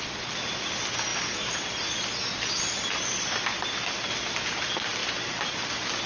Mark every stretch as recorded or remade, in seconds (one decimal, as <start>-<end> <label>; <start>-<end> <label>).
0.0-6.1 recorded